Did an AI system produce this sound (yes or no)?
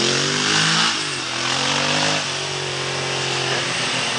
no